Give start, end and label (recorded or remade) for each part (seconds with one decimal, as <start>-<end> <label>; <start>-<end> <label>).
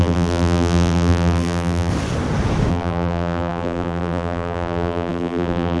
0.0-1.9 remade; 1.9-2.7 recorded; 2.7-5.8 remade